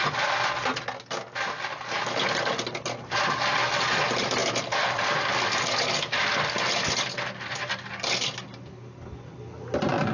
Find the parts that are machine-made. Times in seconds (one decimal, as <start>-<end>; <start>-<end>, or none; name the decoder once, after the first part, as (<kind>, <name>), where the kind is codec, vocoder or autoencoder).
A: none